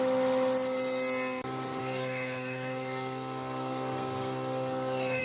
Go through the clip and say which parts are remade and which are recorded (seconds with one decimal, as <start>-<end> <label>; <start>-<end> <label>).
0.0-1.8 recorded; 1.8-5.2 remade